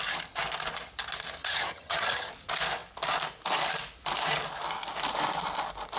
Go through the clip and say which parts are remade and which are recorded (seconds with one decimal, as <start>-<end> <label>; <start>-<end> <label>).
0.0-1.4 recorded; 1.4-2.3 remade; 2.3-6.0 recorded